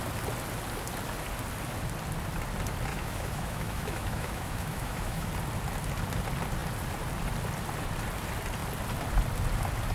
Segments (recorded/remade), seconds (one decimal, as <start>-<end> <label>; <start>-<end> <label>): 0.0-2.9 recorded; 2.9-5.3 remade; 5.3-9.9 recorded